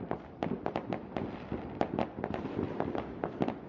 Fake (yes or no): no